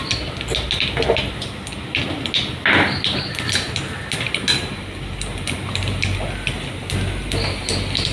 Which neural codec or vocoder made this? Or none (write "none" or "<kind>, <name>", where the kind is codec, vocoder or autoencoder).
none